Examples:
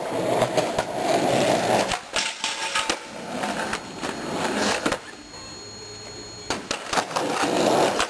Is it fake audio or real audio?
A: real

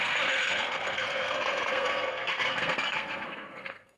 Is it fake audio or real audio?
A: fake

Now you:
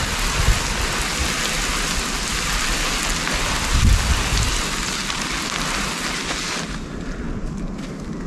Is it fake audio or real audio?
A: real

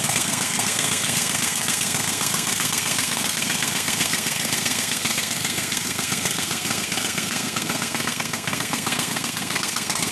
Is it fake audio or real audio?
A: fake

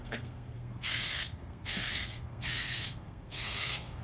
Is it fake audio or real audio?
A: fake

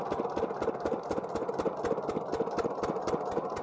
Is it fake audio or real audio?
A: real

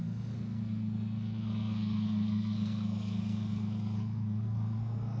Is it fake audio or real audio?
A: fake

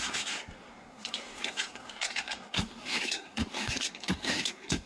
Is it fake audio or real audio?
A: fake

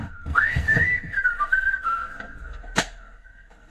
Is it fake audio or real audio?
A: fake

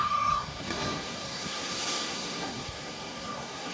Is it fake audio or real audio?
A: fake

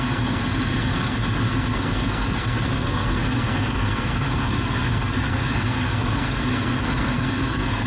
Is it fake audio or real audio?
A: fake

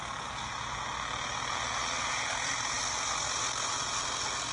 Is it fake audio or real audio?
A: real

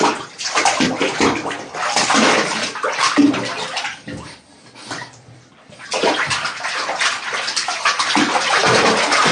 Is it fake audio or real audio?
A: real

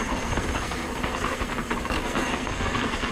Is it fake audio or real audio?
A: fake